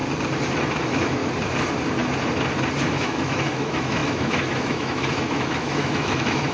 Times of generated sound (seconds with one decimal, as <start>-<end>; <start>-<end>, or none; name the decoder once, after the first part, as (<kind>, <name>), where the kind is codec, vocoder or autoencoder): 0.7-1.2 (autoencoder, DAC-VAE); 2.8-6.5